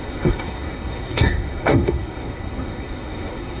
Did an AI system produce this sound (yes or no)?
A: yes